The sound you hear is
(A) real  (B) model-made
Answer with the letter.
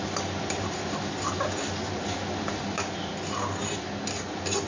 A